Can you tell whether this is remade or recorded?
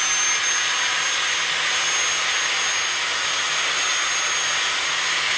recorded